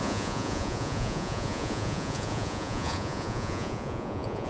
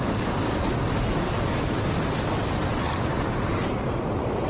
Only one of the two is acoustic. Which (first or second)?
second